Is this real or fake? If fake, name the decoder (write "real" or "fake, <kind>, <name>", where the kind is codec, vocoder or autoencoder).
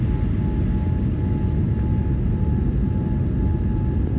real